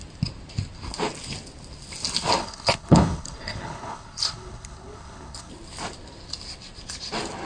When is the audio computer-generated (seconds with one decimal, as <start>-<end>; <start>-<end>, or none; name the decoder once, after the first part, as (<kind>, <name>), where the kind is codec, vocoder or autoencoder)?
2.4-5.5 (codec, HILCodec)